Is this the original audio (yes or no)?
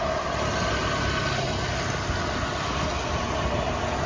yes